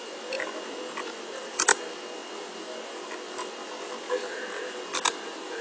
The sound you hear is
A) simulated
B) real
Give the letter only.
B